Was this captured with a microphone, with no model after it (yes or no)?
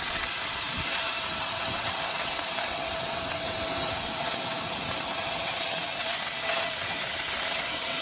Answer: no